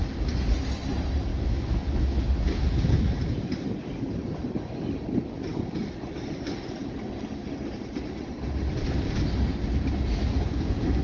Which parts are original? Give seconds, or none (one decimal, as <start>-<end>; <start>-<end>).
0.0-1.3; 2.2-11.0

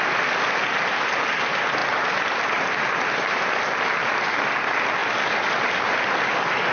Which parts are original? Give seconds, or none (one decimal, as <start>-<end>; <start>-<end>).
0.0-6.7

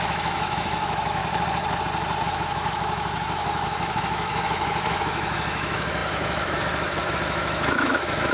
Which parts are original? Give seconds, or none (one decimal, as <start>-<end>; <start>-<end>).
1.2-2.3

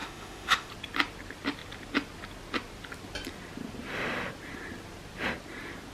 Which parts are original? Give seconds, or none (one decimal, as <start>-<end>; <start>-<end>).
0.7-5.9

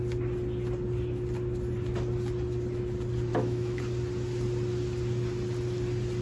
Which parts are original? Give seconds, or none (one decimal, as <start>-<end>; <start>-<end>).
0.0-3.3; 3.8-6.2

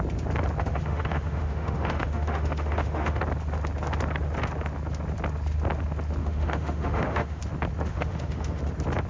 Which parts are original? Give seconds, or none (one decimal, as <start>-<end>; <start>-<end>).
0.0-0.6; 3.2-6.2; 7.4-7.9; 8.6-9.1

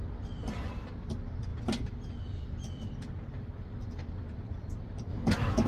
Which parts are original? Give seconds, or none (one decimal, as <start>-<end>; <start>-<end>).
0.0-5.1